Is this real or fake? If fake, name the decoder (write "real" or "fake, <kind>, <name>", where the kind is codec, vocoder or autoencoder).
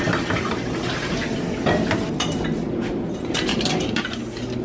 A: real